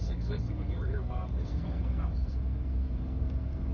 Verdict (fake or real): fake